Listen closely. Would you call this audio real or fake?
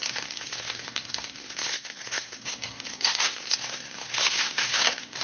fake